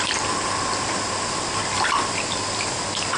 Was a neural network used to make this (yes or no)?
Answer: no